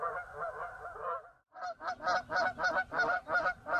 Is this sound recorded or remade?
recorded